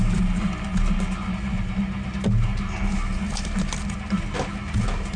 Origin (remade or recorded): recorded